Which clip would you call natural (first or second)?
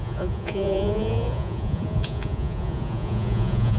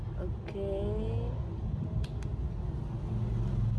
second